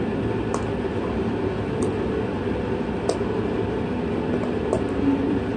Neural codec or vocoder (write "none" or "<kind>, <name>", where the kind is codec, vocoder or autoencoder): none